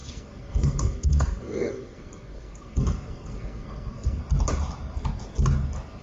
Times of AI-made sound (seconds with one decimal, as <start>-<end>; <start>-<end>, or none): 0.0-4.2